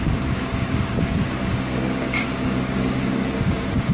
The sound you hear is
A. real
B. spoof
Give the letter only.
B